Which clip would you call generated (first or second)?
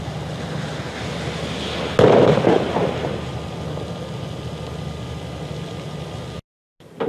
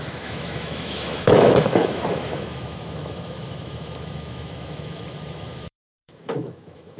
second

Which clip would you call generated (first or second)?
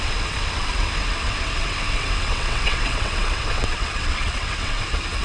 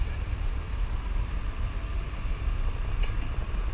first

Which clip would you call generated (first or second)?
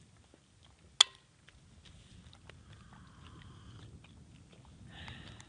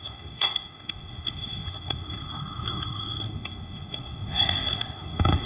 second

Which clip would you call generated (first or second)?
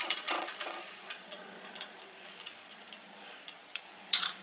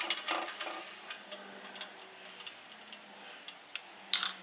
first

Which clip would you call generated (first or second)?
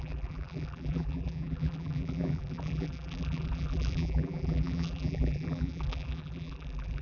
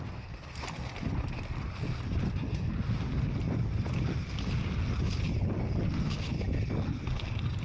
first